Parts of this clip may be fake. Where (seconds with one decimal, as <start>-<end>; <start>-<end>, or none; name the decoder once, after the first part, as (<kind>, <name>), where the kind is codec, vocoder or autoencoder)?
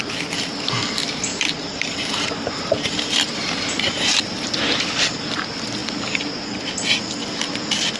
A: 1.3-4.8 (vocoder, BigVGAN v2)